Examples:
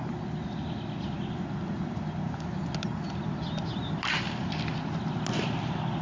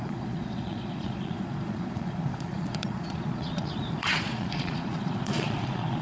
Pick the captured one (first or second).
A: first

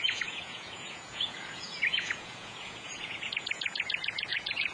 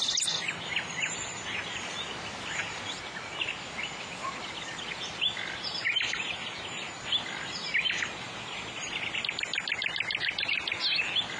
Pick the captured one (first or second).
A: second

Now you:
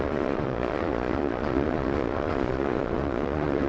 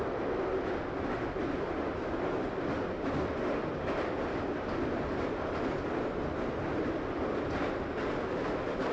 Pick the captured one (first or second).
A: second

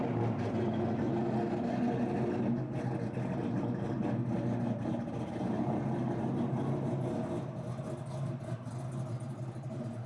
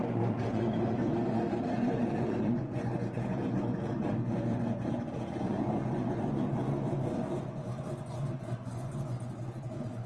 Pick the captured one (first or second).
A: first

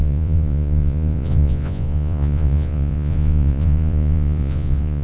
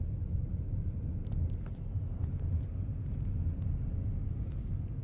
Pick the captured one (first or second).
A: second